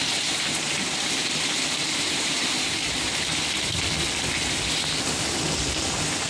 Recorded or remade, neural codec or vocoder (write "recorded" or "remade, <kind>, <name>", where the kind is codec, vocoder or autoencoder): recorded